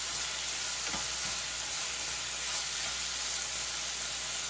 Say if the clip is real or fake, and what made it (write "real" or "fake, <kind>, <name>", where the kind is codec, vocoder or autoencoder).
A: real